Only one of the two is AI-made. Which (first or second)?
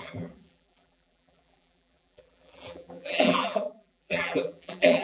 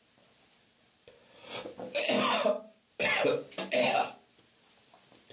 first